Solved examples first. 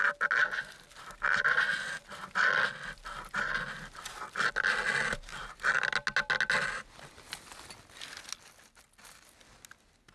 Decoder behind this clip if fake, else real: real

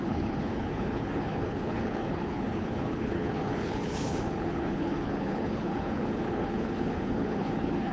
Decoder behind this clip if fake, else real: fake, codec, HILCodec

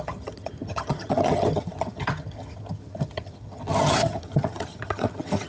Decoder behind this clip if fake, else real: fake, vocoder, HiFi-GAN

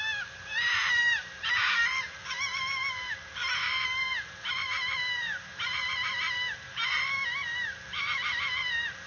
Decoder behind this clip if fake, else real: fake, vocoder, BigVGAN v2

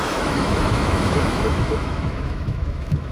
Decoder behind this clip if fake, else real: fake, autoencoder, DAC-VAE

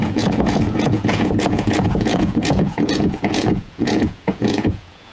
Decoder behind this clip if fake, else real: fake, vocoder, Vocos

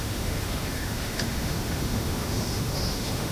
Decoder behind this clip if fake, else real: fake, autoencoder, DAC-VAE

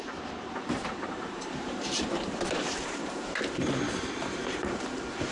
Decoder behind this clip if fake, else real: fake, vocoder, BigVGAN v2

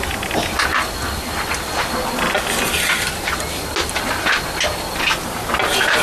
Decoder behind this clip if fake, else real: real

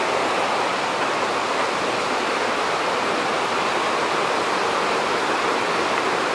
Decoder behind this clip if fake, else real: real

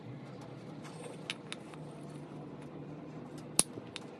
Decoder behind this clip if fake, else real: real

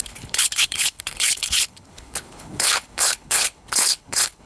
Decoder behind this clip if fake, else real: fake, codec, HILCodec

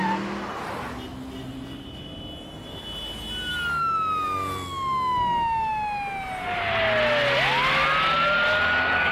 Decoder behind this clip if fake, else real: real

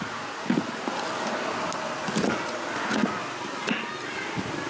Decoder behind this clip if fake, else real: real